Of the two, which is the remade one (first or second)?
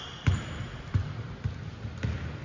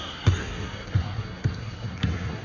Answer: second